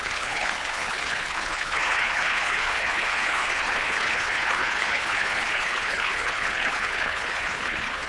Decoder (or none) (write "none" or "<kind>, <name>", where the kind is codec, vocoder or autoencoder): codec, HILCodec